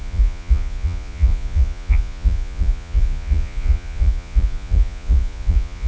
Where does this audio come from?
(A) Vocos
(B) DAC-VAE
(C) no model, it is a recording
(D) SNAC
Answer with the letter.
A